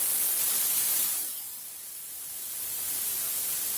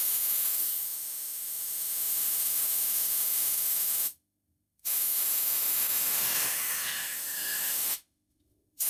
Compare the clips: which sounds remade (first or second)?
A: second